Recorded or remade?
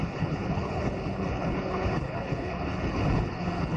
remade